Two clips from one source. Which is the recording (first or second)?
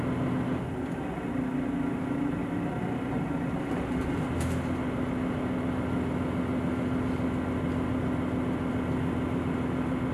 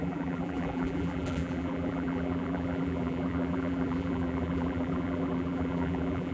first